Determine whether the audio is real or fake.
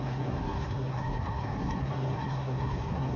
fake